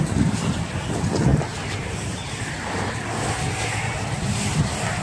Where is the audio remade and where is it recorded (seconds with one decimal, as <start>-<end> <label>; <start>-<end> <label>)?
0.0-5.0 recorded